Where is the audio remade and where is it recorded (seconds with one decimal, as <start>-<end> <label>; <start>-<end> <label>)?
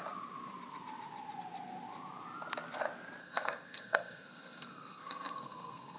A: 0.0-3.2 recorded; 3.2-6.0 remade